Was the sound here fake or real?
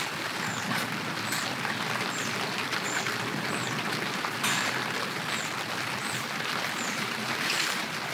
real